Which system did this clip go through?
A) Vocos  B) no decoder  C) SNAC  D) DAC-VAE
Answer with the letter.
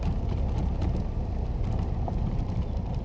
B